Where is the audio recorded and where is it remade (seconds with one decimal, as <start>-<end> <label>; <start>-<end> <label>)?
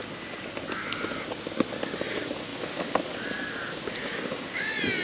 0.0-5.0 recorded